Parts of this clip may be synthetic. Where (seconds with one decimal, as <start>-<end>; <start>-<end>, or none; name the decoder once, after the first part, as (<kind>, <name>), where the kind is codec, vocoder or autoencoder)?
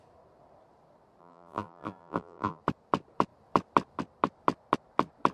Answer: 1.2-2.6 (vocoder, BigVGAN v2)